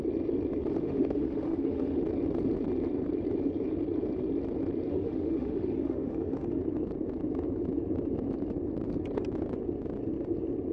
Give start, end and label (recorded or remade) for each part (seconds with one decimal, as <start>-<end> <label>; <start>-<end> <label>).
0.0-0.7 recorded; 0.7-2.0 remade; 2.0-4.9 recorded; 4.9-6.6 remade; 6.6-10.7 recorded